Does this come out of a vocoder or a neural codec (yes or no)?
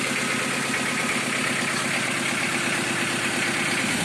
no